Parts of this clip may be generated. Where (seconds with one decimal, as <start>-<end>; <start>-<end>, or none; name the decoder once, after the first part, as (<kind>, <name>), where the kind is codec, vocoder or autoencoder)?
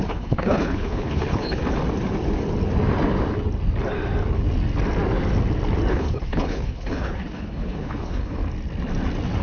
0.0-1.6 (codec, HILCodec); 5.9-8.4